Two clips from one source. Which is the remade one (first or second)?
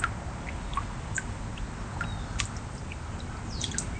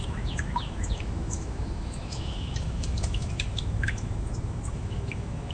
second